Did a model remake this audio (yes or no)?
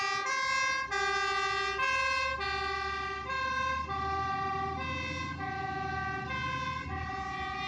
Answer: no